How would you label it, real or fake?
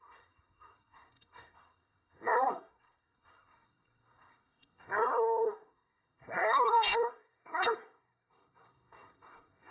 fake